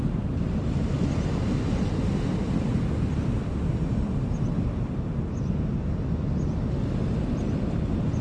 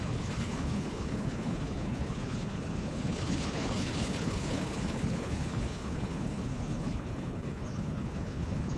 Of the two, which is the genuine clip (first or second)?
first